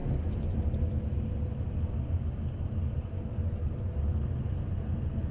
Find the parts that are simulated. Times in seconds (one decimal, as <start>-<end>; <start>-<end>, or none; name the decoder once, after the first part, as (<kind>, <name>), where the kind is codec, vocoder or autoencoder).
none